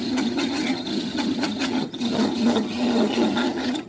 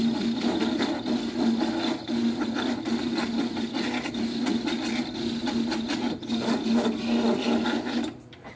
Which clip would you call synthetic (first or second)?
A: first